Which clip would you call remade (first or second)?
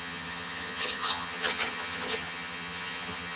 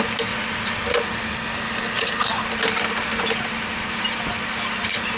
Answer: first